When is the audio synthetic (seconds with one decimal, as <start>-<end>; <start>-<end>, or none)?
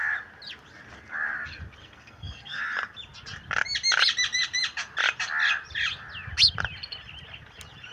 1.8-2.6